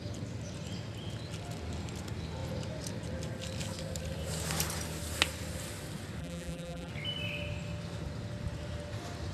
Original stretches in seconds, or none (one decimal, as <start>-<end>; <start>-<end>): 0.0-6.2; 6.9-9.3